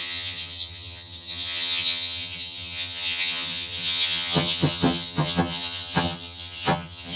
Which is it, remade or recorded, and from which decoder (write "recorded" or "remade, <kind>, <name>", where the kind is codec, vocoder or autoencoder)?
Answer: remade, vocoder, HiFi-GAN